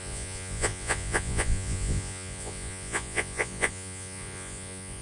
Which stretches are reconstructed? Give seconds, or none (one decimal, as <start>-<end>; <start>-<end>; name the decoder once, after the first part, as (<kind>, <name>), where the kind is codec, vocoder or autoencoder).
0.0-5.0 (vocoder, Vocos)